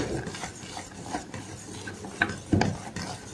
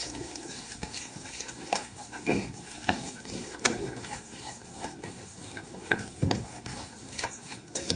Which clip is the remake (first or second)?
second